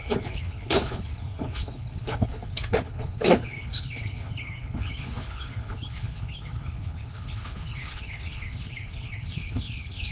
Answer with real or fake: fake